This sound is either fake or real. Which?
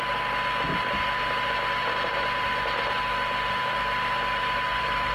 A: real